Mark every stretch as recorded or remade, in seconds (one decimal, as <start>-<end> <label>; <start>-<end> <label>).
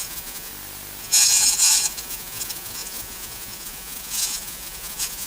0.0-0.5 remade; 0.5-1.0 recorded; 1.0-5.3 remade